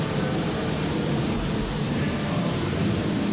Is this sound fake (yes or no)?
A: yes